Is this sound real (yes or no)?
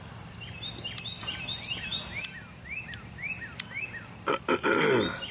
yes